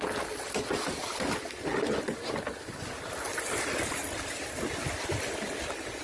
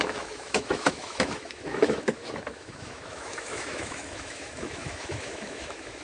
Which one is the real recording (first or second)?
first